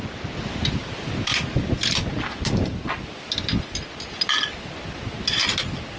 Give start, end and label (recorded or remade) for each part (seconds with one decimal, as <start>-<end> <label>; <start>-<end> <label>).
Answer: 0.0-6.0 recorded